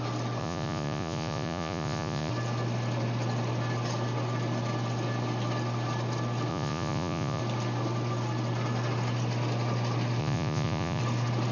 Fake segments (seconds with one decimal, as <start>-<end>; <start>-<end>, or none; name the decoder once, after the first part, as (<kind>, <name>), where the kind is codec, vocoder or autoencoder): 0.4-2.3 (vocoder, Vocos); 6.5-7.4; 10.2-11.0